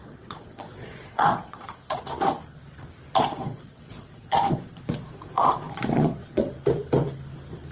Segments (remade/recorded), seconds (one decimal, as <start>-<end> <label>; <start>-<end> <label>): 0.0-2.0 remade; 2.0-3.2 recorded; 3.2-6.5 remade; 6.5-7.7 recorded